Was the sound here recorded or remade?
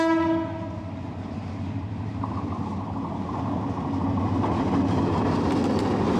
recorded